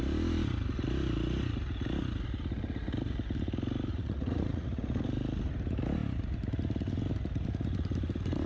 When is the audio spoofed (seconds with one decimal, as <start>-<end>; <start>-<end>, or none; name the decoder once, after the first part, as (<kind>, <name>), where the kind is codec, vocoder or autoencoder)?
3.9-4.8 (vocoder, Vocos)